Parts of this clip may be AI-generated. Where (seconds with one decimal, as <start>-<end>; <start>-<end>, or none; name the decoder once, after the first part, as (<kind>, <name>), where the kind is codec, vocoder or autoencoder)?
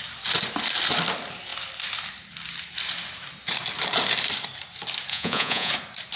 5.1-5.7 (vocoder, Vocos)